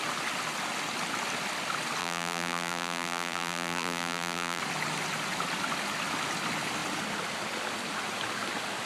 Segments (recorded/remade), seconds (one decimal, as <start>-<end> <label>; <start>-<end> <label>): 0.0-2.0 recorded; 2.0-4.6 remade; 4.6-8.9 recorded